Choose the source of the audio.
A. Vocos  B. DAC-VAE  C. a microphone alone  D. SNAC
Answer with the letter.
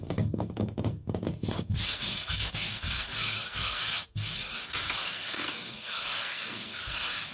D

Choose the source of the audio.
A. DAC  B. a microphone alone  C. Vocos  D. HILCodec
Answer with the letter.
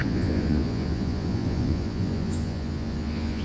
C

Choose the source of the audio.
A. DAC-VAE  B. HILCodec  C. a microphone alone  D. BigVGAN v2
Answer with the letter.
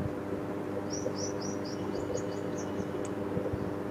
C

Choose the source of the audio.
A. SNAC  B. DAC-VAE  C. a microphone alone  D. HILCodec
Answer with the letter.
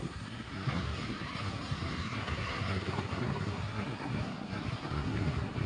A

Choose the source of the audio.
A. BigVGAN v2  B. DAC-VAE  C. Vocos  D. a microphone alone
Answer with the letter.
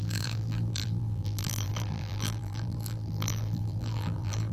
A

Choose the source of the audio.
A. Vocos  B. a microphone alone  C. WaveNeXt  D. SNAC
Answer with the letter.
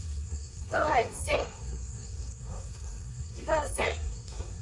D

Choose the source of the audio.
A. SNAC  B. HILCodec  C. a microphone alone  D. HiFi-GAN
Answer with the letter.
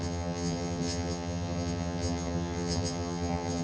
D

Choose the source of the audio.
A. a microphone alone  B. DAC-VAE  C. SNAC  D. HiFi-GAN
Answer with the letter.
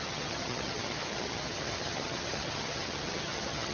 D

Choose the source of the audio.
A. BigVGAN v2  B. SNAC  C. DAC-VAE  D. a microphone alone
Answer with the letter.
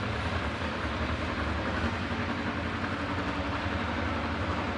D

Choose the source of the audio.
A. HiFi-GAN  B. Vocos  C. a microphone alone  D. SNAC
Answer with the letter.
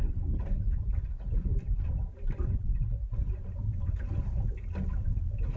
C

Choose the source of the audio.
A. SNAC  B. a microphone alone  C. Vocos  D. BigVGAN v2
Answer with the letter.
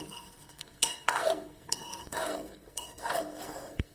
A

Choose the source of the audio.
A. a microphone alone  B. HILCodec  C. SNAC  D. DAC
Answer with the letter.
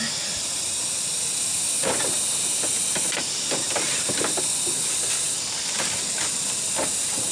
A